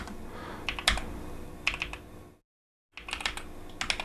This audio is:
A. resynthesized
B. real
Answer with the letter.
B